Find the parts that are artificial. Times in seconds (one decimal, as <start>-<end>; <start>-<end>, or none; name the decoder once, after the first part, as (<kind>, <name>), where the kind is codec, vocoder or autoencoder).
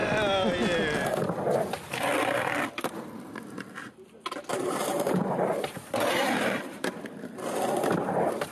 4.5-6.9 (vocoder, BigVGAN v2)